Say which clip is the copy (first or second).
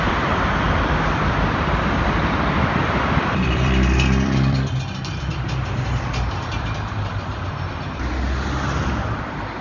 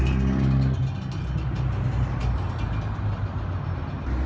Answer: first